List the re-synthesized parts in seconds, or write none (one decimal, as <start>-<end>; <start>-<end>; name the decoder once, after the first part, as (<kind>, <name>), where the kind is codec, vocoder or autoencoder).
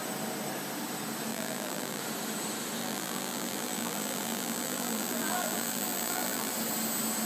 1.3-2.0 (vocoder, BigVGAN v2); 2.8-6.5